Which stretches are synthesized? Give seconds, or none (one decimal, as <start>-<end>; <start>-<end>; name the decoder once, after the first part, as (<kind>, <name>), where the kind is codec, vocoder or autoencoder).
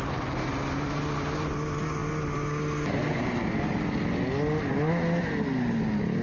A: none